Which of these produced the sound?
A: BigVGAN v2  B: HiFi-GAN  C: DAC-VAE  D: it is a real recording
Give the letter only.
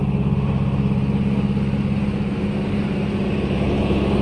D